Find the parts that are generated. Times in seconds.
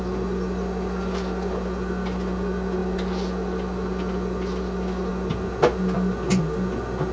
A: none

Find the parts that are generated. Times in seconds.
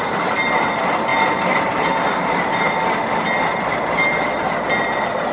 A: 1.1-1.9 (vocoder, BigVGAN v2)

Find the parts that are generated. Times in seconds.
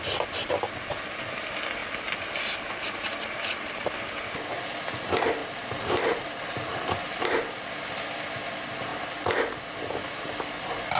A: 1.8-3.9 (vocoder, BigVGAN v2); 5.4-7.1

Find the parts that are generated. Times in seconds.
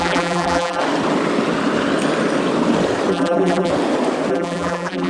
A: 0.0-0.8 (vocoder, BigVGAN v2); 3.1-3.7; 4.3-5.1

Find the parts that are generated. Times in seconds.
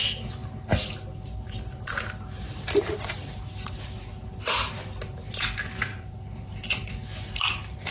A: 5.9-6.9 (vocoder, BigVGAN v2)